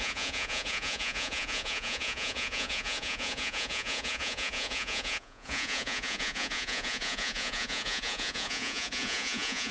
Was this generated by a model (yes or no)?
yes